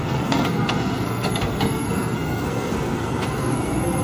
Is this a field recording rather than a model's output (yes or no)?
no